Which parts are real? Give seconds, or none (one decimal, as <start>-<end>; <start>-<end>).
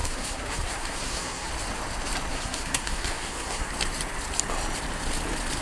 1.5-2.3; 3.7-5.6